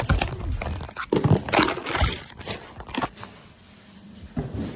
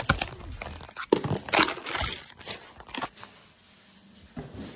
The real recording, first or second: second